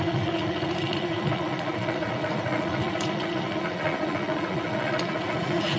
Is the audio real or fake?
fake